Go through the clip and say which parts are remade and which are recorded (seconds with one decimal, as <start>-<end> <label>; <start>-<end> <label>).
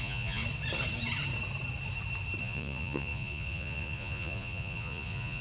0.0-0.4 remade; 0.4-2.4 recorded; 2.4-5.4 remade